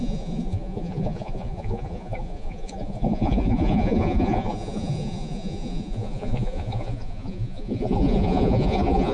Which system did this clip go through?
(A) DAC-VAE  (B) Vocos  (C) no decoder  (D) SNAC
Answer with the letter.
B